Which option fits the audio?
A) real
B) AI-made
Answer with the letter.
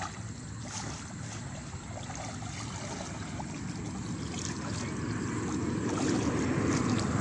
A